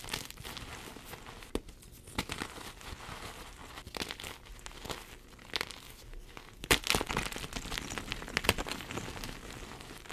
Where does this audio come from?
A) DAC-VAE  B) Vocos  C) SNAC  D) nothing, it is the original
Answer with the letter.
D